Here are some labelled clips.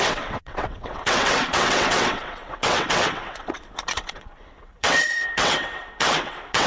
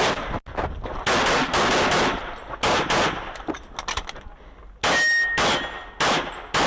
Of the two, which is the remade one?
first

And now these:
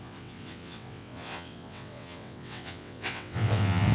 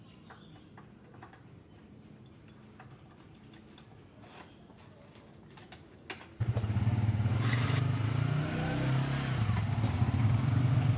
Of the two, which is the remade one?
first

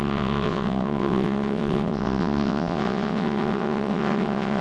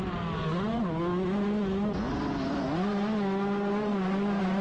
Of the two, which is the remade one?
first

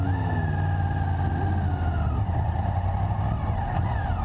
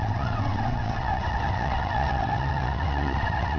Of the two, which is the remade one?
second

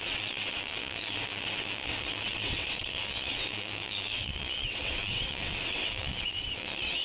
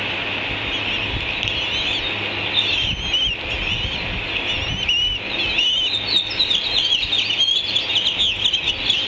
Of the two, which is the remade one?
first